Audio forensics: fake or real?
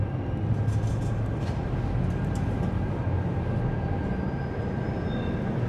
real